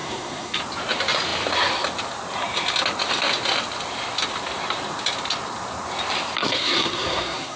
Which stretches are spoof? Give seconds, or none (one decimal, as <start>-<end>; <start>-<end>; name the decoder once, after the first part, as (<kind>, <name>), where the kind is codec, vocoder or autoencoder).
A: 0.0-0.6 (codec, SNAC); 6.4-7.6